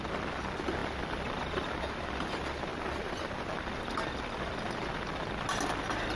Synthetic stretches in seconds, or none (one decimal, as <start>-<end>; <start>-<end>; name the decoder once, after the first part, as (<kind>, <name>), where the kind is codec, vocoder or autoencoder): 0.8-1.9 (vocoder, BigVGAN v2); 2.7-3.5